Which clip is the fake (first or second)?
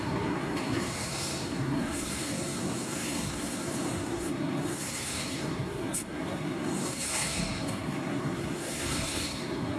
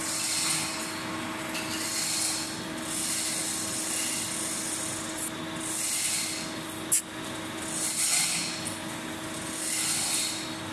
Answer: first